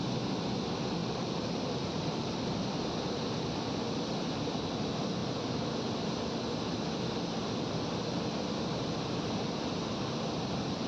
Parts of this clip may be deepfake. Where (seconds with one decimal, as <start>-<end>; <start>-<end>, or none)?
1.0-2.7